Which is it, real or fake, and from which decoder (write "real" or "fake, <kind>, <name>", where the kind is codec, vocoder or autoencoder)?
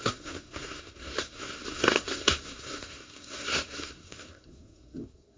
fake, codec, SNAC